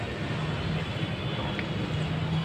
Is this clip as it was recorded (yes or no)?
yes